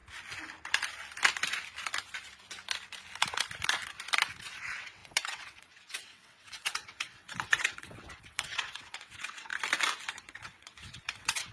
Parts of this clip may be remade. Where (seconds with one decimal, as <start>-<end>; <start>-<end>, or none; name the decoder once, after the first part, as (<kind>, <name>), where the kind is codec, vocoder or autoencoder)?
4.4-9.5 (vocoder, WaveNeXt); 10.1-11.5